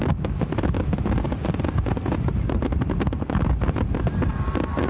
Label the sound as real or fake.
real